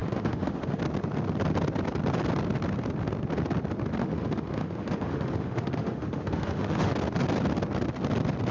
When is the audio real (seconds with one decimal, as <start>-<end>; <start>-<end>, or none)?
0.8-4.0; 6.9-8.5